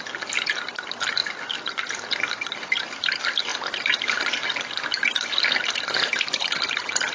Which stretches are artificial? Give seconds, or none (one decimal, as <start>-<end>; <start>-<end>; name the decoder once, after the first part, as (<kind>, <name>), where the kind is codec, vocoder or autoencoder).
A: none